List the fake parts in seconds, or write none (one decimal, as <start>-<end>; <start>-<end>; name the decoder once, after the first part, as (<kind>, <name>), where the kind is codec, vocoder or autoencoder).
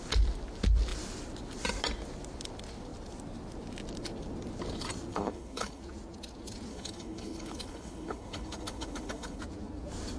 5.1-5.8 (codec, HILCodec); 6.7-9.4